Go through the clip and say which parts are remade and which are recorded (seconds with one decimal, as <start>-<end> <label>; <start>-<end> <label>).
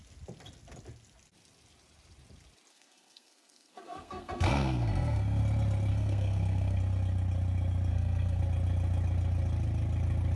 0.0-2.7 recorded; 2.7-5.4 remade; 5.4-5.9 recorded; 5.9-6.8 remade; 6.8-7.9 recorded; 7.9-8.4 remade; 8.4-10.4 recorded